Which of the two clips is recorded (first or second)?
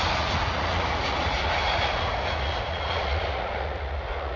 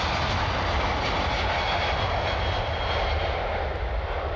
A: second